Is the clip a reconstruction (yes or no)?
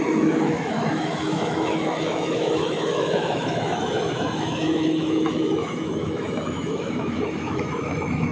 yes